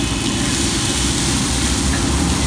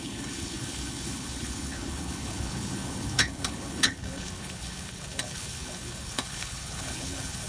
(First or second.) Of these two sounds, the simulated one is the second